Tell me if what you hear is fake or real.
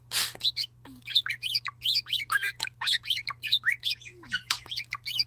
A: fake